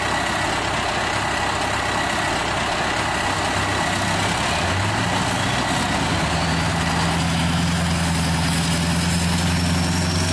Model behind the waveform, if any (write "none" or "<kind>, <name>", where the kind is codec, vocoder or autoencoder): none